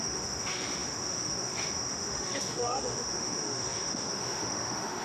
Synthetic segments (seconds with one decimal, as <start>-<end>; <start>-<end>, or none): 0.0-5.0